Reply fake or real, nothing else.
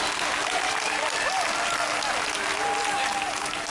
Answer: real